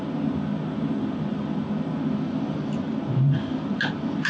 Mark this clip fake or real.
real